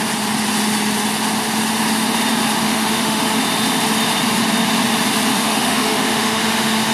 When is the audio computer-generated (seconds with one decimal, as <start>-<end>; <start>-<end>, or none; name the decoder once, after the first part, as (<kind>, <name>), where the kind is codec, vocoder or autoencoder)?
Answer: 2.6-3.2 (autoencoder, DAC-VAE); 5.3-6.4